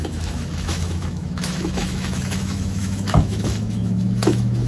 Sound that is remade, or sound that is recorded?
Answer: remade